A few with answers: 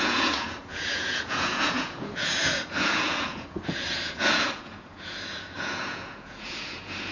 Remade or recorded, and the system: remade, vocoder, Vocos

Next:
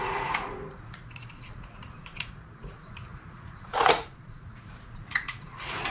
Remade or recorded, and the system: remade, vocoder, Vocos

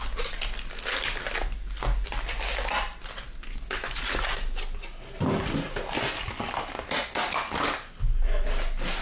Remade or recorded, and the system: recorded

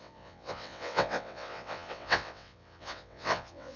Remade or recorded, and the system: remade, vocoder, WaveNeXt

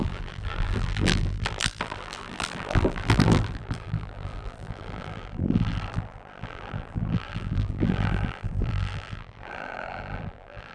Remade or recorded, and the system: remade, vocoder, BigVGAN v2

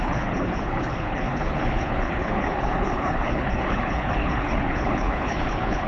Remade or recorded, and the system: remade, codec, HILCodec